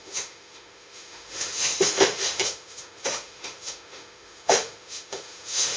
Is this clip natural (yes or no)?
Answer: no